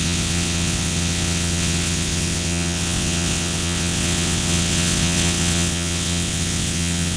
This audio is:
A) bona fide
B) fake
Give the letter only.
B